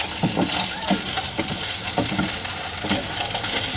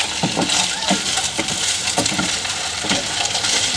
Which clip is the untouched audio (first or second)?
first